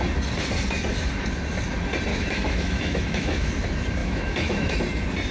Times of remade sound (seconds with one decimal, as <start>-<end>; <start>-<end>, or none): 2.1-3.5; 4.0-4.8

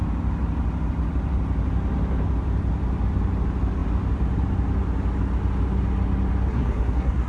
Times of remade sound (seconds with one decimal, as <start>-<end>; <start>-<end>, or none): 6.5-7.3